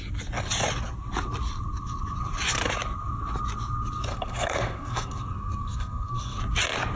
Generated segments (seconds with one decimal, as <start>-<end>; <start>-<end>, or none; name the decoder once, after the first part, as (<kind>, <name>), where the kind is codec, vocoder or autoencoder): 4.1-6.4 (codec, SNAC)